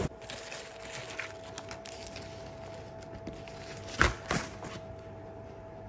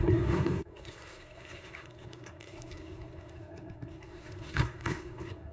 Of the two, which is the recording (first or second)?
first